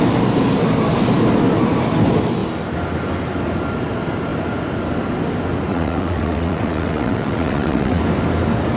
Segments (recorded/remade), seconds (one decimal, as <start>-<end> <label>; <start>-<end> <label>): 0.0-5.7 recorded; 5.7-8.0 remade; 8.0-8.8 recorded